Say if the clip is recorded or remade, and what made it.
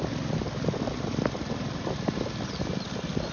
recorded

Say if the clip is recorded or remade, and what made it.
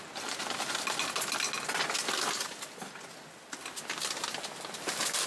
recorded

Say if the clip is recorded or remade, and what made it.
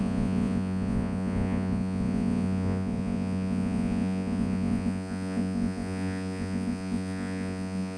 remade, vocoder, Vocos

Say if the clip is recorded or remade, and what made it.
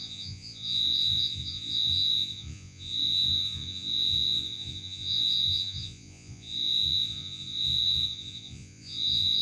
remade, vocoder, Vocos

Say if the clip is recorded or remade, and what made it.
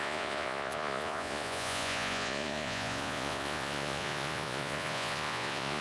remade, vocoder, Vocos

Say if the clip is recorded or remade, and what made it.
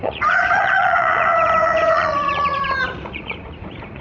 remade, vocoder, Vocos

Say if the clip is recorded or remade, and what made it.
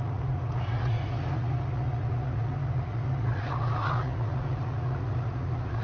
remade, vocoder, Vocos